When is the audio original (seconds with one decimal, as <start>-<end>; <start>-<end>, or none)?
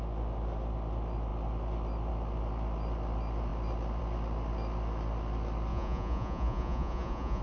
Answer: 0.0-5.7